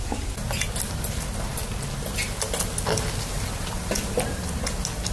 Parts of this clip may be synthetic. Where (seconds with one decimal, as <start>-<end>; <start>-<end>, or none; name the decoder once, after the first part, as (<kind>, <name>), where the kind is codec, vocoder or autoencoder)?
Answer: none